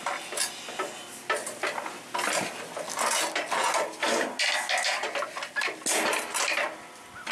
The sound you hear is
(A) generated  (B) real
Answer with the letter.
B